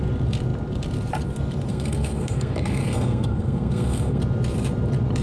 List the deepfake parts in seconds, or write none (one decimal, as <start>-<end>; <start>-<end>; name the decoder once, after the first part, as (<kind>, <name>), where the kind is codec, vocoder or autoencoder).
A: 1.7-4.2 (codec, SNAC)